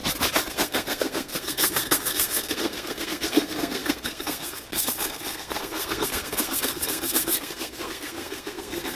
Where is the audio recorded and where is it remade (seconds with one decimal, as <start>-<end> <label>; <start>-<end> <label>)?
0.0-0.5 recorded; 0.5-9.0 remade